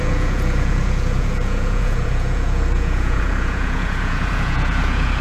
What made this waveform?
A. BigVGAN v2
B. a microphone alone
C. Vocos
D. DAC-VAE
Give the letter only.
C